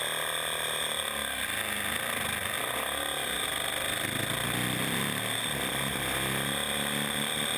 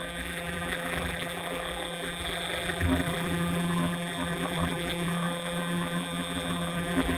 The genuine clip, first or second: first